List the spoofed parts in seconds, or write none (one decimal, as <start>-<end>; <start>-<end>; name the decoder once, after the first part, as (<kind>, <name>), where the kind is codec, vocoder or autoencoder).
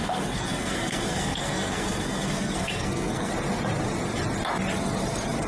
0.0-3.3 (codec, SNAC)